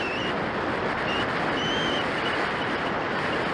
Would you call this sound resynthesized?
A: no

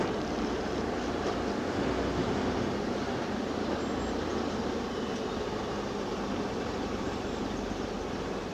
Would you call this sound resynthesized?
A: yes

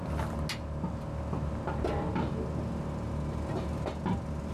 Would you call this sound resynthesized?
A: no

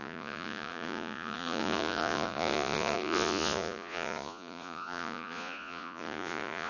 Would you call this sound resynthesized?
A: yes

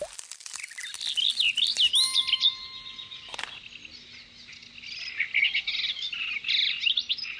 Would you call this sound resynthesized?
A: no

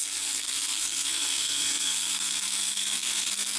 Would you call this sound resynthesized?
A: yes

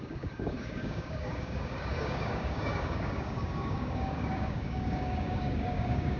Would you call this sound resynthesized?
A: yes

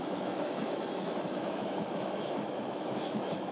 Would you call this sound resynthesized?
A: yes